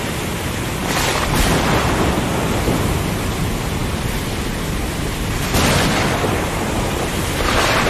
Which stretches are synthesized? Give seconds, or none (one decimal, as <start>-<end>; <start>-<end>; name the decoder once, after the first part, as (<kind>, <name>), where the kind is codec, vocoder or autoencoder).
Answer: none